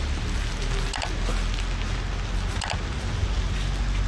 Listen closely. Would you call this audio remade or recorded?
recorded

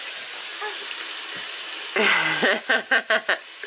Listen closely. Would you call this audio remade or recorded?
recorded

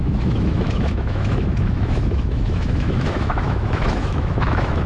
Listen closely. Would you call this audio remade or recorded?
remade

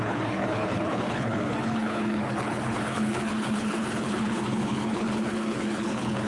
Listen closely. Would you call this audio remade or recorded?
remade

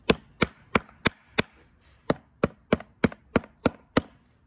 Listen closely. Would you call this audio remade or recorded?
recorded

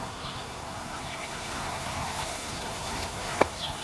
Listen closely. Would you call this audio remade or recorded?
remade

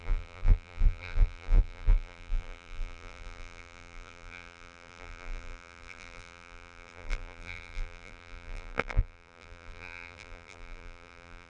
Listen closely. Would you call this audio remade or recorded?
remade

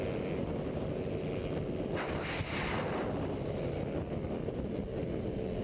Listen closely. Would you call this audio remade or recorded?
recorded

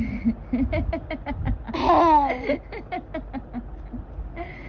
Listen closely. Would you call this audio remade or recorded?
recorded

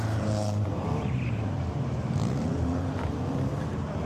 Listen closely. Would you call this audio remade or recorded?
remade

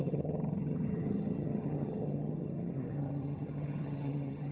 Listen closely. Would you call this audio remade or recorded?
remade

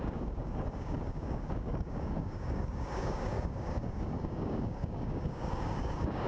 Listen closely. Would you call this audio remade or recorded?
remade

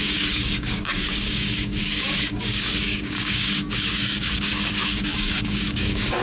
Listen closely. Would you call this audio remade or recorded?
remade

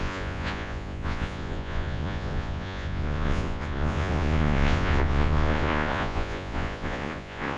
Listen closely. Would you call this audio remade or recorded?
remade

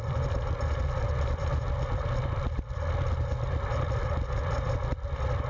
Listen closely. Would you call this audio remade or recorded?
recorded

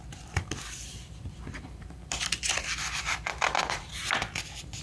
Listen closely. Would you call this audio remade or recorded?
remade